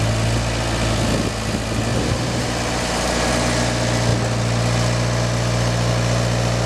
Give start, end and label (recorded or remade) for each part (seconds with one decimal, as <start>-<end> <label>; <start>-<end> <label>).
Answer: 0.0-1.9 recorded; 1.9-3.3 remade; 3.3-6.7 recorded